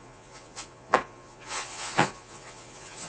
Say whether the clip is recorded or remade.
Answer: remade